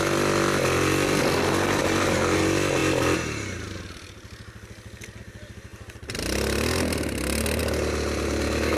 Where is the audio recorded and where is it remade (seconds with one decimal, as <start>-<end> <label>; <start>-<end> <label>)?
0.0-8.8 recorded

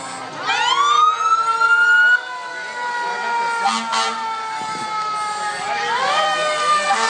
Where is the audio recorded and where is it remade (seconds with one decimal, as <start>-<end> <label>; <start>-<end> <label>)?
0.0-5.5 recorded; 5.5-7.1 remade

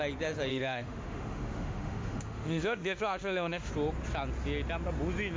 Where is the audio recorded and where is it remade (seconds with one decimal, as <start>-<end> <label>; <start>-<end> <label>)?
0.0-0.5 recorded; 0.5-3.7 remade; 3.7-5.4 recorded

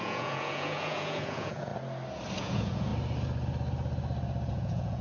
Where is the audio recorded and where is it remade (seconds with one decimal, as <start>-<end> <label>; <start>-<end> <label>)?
0.0-1.7 remade; 1.7-2.4 recorded; 2.4-2.9 remade; 2.9-4.5 recorded; 4.5-5.0 remade

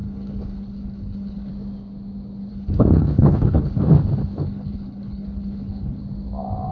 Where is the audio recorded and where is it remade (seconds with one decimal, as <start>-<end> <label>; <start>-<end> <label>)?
0.0-1.5 remade; 1.5-2.5 recorded; 2.5-3.9 remade; 3.9-4.4 recorded; 4.4-6.0 remade; 6.0-6.7 recorded

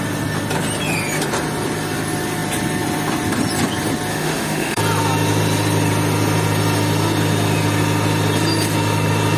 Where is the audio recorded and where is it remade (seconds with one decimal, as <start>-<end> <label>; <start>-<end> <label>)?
0.0-4.1 recorded; 4.1-4.8 remade; 4.8-9.4 recorded

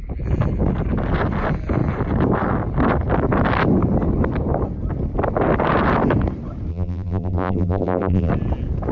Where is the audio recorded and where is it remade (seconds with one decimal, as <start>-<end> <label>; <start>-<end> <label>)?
0.0-6.7 recorded; 6.7-8.3 remade; 8.3-8.9 recorded